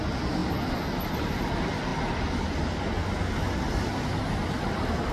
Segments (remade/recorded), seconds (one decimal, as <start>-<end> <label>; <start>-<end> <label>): 0.0-5.1 recorded